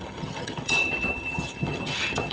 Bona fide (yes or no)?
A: no